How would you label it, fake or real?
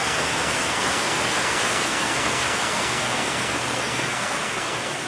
fake